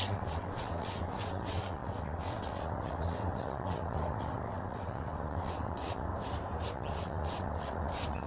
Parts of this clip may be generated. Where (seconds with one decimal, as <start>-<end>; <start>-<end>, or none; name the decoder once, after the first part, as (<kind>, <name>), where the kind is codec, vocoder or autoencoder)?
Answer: 0.0-6.1 (vocoder, WaveNeXt); 6.7-8.3